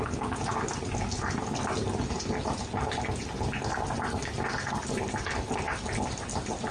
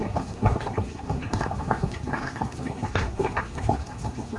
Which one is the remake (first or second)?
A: second